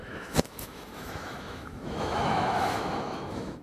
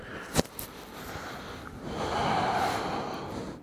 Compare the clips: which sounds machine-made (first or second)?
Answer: first